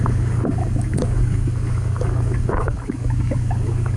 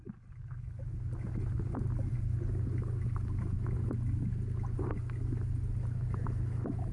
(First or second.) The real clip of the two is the second